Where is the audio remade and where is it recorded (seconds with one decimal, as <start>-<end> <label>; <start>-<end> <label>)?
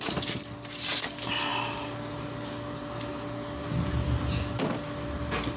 0.0-5.6 recorded